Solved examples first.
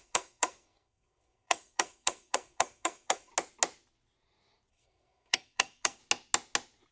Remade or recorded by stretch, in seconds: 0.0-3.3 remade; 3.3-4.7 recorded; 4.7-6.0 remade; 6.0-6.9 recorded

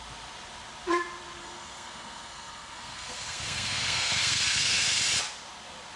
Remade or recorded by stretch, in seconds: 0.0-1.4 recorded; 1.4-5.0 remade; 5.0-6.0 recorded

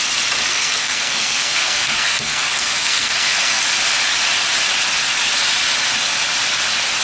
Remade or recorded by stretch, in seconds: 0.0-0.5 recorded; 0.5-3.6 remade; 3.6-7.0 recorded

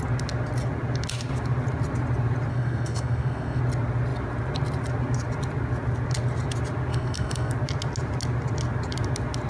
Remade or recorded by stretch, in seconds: 0.0-2.5 recorded; 2.5-3.6 remade; 3.6-6.9 recorded; 6.9-7.5 remade; 7.5-9.5 recorded